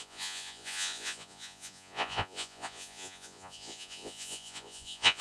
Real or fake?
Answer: fake